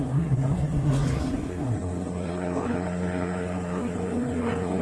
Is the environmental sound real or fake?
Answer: fake